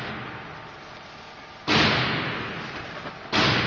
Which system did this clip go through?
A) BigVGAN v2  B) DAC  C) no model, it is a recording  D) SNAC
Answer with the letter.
C